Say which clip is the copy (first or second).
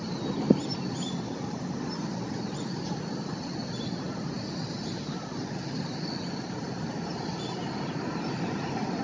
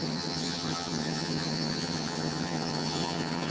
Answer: second